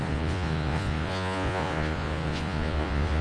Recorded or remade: remade